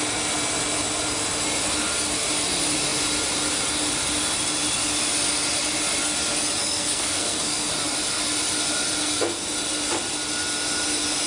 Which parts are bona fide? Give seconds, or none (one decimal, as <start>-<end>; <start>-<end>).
0.0-6.6; 7.7-9.0; 9.5-11.3